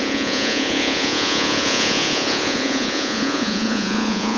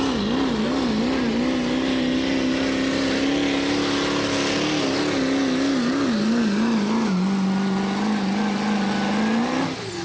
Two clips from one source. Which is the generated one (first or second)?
first